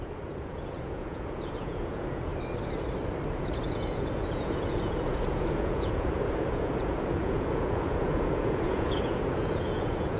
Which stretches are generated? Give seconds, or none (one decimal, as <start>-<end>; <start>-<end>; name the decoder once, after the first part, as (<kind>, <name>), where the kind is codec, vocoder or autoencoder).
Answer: 0.0-2.3 (vocoder, Vocos); 3.3-10.2